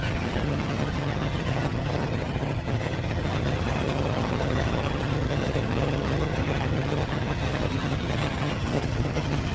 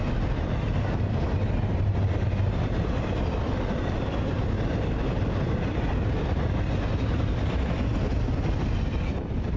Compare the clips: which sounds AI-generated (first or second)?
first